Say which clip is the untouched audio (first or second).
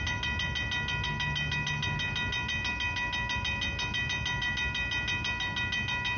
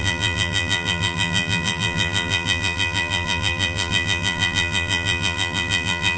first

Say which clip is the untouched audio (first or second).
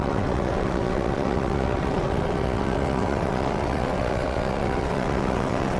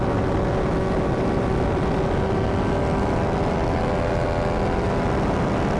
second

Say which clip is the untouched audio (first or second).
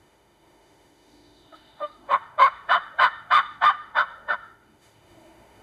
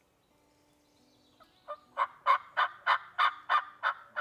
second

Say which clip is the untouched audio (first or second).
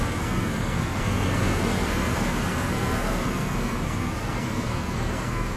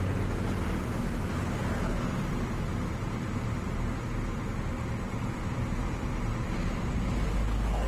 second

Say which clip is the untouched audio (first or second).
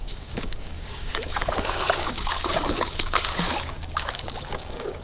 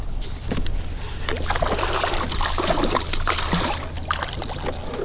second